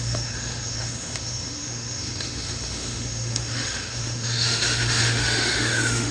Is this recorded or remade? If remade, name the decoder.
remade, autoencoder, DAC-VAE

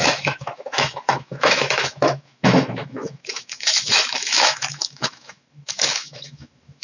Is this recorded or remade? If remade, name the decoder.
remade, autoencoder, DAC-VAE